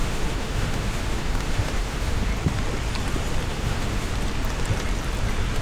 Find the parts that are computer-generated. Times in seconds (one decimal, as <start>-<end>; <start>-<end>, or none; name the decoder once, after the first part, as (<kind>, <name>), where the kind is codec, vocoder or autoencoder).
0.0-2.3 (autoencoder, DAC-VAE); 3.5-4.1